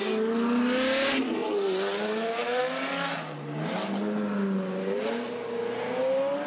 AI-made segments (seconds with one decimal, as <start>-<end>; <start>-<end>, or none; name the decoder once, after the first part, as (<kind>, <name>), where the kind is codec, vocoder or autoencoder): none